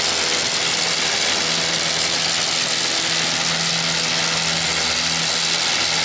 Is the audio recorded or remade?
recorded